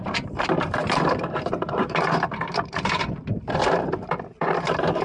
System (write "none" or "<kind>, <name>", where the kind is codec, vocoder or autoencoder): vocoder, BigVGAN v2